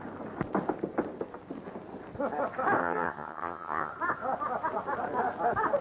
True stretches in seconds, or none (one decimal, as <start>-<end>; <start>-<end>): 0.0-2.8; 3.9-5.8